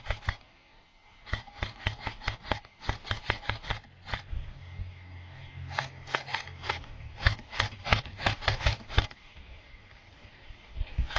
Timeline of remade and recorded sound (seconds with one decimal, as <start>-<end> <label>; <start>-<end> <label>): 0.0-3.7 remade; 3.7-4.3 recorded; 4.3-11.2 remade